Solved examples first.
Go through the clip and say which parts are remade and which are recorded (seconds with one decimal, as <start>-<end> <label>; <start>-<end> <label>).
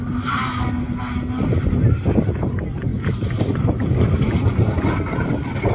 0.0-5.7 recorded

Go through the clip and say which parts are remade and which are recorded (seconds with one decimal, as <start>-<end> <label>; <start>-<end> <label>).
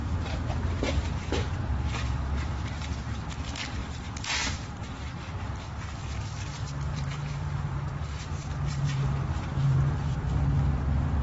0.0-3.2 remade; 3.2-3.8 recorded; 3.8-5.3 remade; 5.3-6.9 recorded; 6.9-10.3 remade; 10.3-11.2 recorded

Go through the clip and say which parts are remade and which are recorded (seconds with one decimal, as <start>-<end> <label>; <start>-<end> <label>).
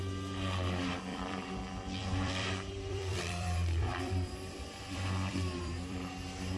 0.0-1.1 recorded; 1.1-1.6 remade; 1.6-2.0 recorded; 2.0-6.0 remade; 6.0-6.6 recorded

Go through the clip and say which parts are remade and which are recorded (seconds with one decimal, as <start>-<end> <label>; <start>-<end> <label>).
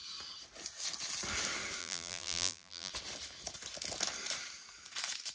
0.0-1.8 recorded; 1.8-2.9 remade; 2.9-5.3 recorded